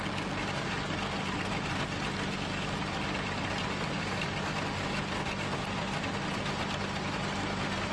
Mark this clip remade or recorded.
recorded